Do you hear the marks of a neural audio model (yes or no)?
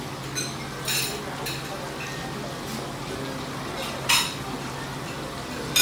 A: no